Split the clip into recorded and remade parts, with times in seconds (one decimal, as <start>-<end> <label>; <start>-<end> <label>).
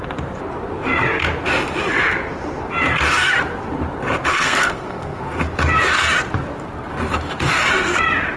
0.0-4.3 recorded; 4.3-5.2 remade; 5.2-8.4 recorded